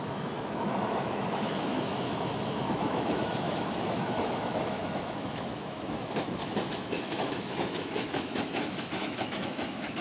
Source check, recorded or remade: remade